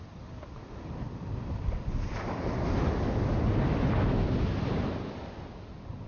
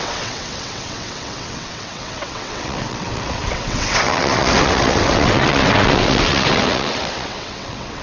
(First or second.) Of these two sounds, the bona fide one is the first